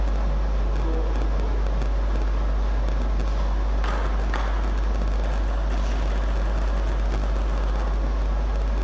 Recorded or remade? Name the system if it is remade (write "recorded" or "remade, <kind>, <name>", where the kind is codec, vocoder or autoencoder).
recorded